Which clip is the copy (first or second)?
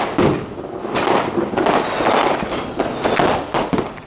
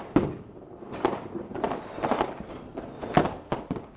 second